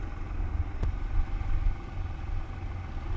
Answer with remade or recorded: recorded